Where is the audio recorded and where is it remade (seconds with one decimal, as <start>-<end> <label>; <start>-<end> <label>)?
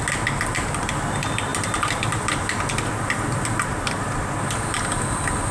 0.0-5.5 recorded